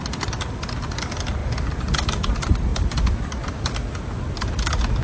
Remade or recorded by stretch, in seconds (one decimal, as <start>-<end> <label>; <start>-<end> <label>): 0.0-5.0 recorded